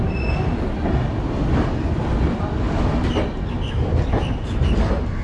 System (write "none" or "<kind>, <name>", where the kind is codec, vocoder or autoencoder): none